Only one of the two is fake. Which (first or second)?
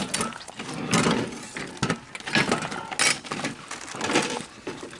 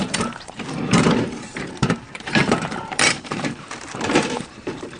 second